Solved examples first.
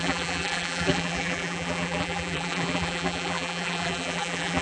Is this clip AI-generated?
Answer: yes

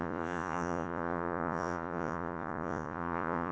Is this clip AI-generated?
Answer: yes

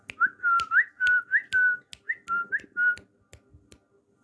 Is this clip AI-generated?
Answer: no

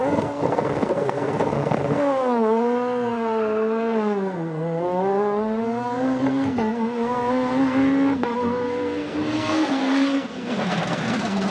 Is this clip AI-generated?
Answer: yes